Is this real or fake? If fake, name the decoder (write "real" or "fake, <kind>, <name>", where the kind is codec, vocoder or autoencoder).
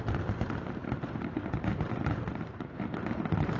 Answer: fake, vocoder, BigVGAN v2